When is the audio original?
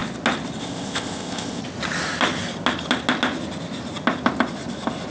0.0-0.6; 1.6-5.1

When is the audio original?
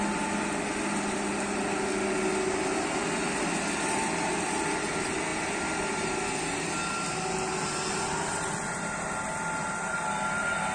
0.0-10.7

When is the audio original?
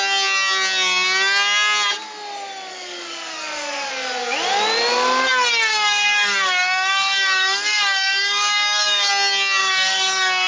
0.0-2.7; 3.9-5.7; 9.1-9.6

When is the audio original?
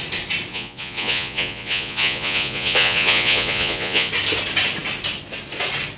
0.0-0.5; 4.1-6.0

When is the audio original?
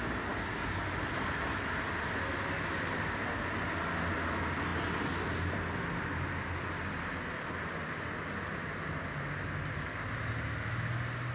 0.0-11.3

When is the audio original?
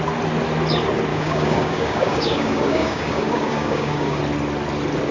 0.0-1.1; 4.2-5.1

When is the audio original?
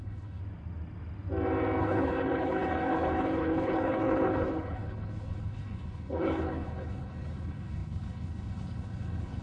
0.4-1.8